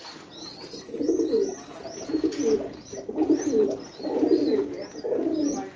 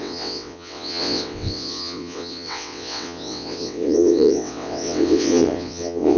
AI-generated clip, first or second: second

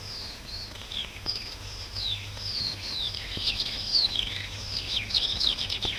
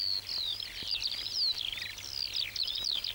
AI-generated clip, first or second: first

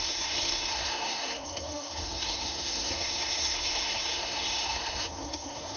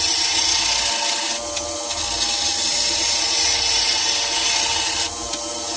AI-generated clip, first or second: first